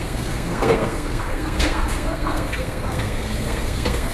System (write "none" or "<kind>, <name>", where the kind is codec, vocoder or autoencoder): codec, SNAC